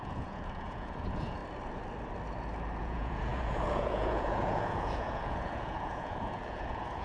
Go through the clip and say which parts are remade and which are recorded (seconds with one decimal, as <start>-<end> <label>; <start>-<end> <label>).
0.0-1.4 remade; 1.4-2.8 recorded; 2.8-7.0 remade